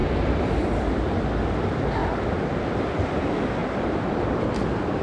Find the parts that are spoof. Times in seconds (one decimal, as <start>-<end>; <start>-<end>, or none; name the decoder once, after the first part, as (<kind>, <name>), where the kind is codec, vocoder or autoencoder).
0.0-0.7 (vocoder, BigVGAN v2); 2.0-3.0; 3.6-4.4